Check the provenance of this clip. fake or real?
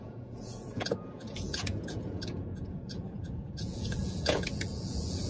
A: fake